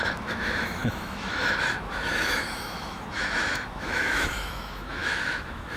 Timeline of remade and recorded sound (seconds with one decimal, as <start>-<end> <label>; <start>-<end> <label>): 0.0-5.8 remade